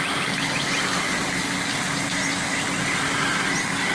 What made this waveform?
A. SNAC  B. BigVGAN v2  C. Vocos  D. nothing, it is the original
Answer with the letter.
D